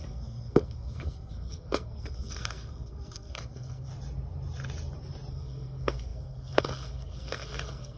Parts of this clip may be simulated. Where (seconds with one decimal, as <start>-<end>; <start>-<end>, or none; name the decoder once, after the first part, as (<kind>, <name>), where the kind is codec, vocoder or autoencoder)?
0.0-3.9 (codec, SNAC); 5.3-8.0